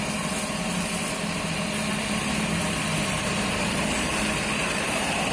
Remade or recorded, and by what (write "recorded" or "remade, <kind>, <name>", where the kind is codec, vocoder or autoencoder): recorded